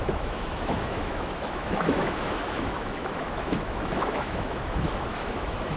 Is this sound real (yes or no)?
no